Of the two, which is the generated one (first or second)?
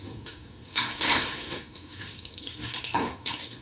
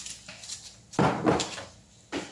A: first